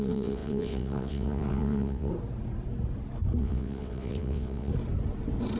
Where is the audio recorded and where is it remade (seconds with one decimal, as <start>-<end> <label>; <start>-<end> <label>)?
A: 0.0-2.1 remade; 2.1-3.4 recorded; 3.4-4.7 remade; 4.7-5.6 recorded